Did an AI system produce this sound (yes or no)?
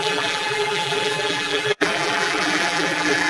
yes